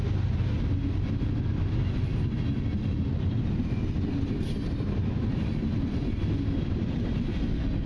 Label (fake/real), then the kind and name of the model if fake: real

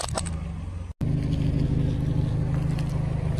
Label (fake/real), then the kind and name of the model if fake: real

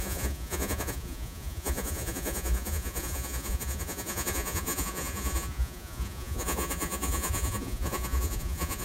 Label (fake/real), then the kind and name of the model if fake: fake, vocoder, Vocos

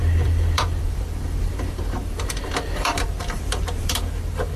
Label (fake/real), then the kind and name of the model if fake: fake, vocoder, BigVGAN v2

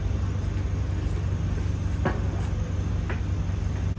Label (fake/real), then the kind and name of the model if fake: real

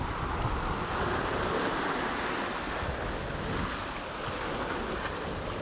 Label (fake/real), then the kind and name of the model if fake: real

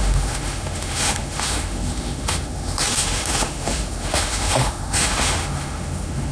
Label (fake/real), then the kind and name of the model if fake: fake, autoencoder, DAC-VAE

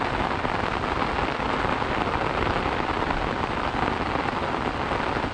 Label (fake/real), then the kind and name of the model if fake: real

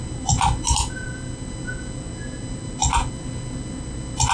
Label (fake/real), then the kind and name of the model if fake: real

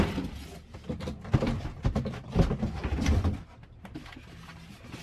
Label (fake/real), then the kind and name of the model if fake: real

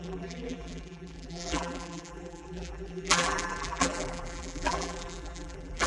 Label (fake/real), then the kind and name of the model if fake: fake, vocoder, BigVGAN v2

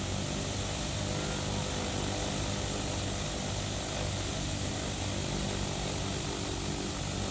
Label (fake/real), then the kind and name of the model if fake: real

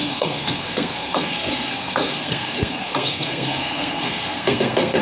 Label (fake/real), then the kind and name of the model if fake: fake, codec, SNAC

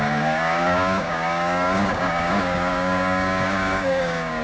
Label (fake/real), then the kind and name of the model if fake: fake, codec, DAC